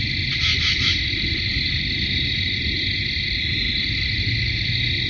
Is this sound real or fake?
real